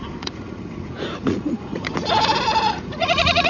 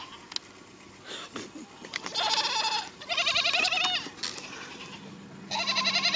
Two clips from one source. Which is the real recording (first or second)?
second